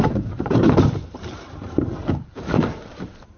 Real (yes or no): no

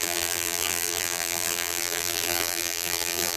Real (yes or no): no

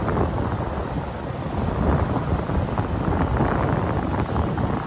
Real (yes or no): no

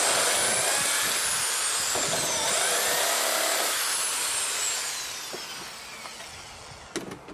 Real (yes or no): yes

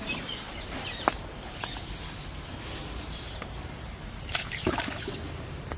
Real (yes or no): no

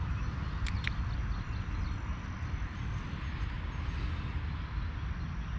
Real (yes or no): yes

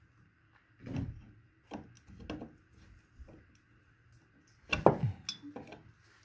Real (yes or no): yes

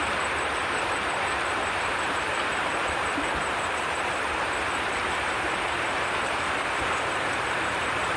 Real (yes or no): no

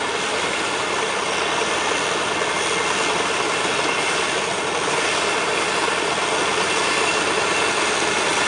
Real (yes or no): no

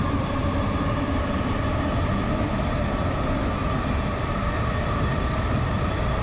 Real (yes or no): no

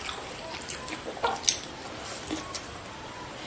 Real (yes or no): no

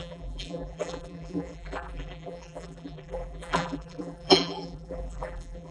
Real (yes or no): no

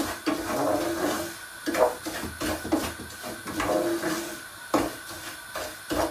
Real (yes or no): yes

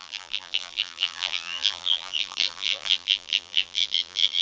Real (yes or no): no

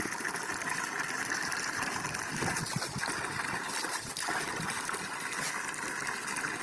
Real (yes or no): yes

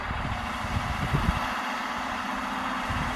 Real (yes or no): no